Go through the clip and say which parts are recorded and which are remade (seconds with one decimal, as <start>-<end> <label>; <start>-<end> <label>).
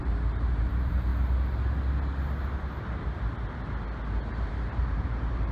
0.0-1.1 remade; 1.1-4.2 recorded; 4.2-5.5 remade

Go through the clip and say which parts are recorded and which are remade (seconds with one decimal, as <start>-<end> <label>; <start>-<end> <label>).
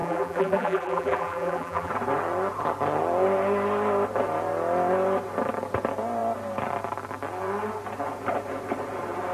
0.0-1.9 remade; 1.9-9.3 recorded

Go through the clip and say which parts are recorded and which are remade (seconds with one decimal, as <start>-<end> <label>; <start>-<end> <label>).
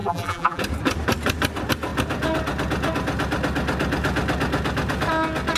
0.0-0.6 remade; 0.6-5.6 recorded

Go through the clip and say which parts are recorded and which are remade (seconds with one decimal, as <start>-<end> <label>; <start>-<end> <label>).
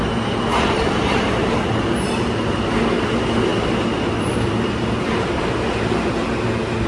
0.0-0.5 recorded; 0.5-2.6 remade; 2.6-3.5 recorded; 3.5-5.5 remade; 5.5-6.9 recorded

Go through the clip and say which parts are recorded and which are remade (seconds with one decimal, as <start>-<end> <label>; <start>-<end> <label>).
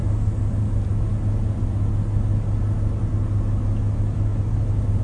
0.0-5.0 recorded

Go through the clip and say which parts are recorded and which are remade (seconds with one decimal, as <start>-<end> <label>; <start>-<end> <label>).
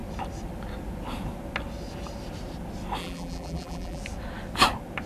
0.0-3.0 recorded; 3.0-4.0 remade; 4.0-5.1 recorded